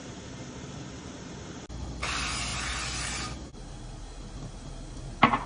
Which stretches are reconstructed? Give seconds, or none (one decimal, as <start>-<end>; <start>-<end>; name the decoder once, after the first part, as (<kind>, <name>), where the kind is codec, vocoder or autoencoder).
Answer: none